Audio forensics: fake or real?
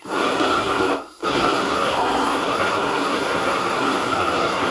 fake